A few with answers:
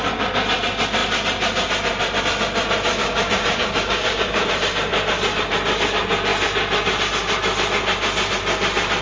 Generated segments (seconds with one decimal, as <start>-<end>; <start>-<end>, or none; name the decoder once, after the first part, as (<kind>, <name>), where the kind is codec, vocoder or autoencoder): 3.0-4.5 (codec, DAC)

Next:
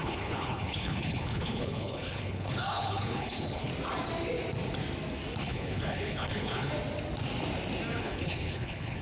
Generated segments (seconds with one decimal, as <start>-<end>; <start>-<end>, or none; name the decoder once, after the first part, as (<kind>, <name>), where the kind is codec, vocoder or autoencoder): 0.0-3.7 (codec, HILCodec); 5.4-6.7; 8.0-9.0

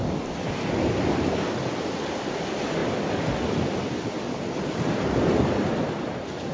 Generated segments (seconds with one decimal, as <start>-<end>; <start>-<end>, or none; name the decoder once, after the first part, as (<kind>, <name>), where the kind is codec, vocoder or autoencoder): none

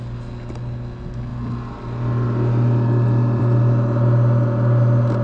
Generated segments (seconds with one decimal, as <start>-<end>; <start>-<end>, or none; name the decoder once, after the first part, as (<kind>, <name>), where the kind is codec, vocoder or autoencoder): none

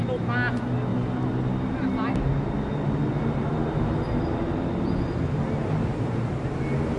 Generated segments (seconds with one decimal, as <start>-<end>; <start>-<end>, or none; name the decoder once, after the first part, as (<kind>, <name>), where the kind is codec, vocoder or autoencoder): 5.9-6.5 (vocoder, BigVGAN v2)

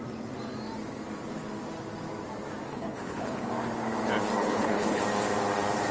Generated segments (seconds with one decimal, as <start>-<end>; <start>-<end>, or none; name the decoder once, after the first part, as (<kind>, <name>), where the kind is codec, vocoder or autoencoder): 2.7-3.5 (codec, HILCodec); 4.4-5.0